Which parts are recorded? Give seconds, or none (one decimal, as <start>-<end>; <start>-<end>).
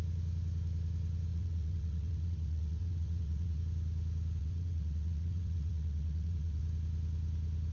0.0-1.3; 3.6-4.4; 6.6-7.7